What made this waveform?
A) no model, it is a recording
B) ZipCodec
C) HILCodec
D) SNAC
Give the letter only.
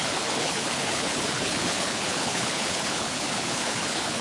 C